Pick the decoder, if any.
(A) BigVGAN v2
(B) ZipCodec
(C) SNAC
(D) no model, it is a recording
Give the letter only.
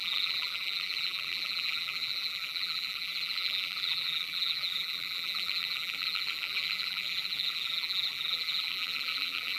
A